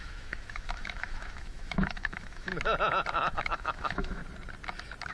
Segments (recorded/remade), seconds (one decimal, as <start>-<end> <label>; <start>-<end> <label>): 0.0-2.5 remade; 2.5-3.1 recorded; 3.1-4.2 remade; 4.2-5.1 recorded